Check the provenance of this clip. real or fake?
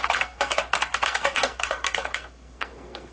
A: fake